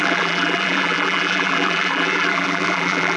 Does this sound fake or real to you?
fake